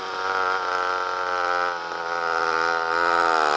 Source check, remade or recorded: recorded